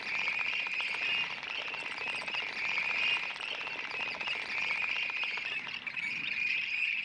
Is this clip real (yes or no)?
yes